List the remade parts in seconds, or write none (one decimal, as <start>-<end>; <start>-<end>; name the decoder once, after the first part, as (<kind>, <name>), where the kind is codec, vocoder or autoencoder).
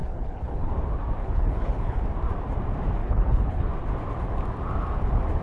0.0-0.7 (codec, HILCodec); 1.2-2.0; 3.0-3.7